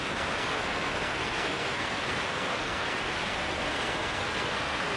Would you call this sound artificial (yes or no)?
yes